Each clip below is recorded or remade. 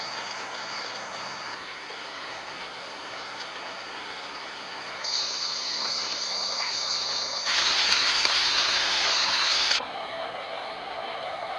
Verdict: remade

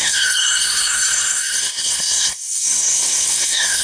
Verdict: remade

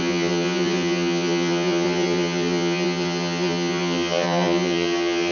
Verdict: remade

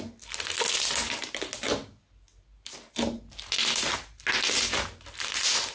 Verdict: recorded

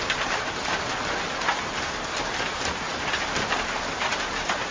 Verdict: recorded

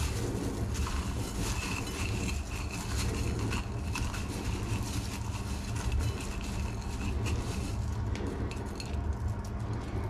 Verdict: recorded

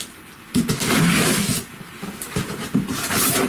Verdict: recorded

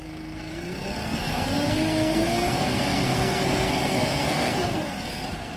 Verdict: remade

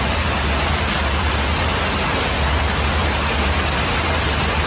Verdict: recorded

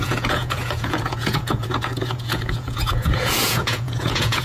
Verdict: remade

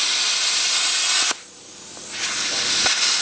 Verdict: recorded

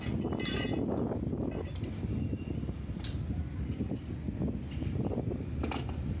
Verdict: recorded